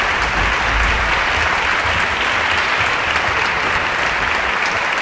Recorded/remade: recorded